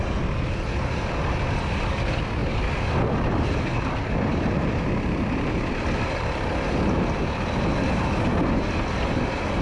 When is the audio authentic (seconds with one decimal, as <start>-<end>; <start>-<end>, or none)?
0.0-9.6